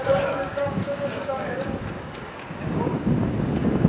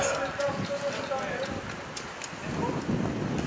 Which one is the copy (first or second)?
first